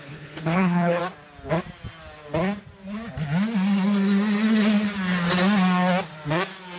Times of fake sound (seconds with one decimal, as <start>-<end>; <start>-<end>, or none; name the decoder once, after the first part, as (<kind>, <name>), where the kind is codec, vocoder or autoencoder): 0.0-1.0 (codec, HILCodec)